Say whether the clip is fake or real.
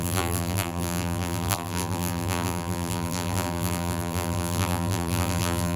fake